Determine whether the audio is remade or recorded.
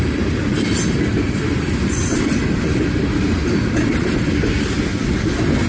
recorded